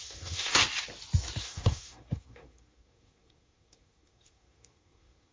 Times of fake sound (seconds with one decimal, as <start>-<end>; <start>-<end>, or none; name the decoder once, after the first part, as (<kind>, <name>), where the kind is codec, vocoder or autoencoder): 0.0-0.6 (codec, SNAC); 1.4-5.3